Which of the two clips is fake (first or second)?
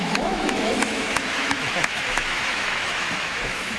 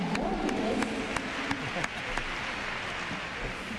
first